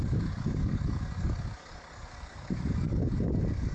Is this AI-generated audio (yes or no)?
yes